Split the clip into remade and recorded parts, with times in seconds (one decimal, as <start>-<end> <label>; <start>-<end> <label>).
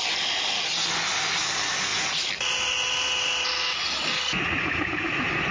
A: 0.0-5.5 recorded